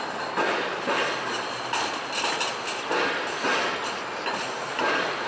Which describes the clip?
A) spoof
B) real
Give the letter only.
B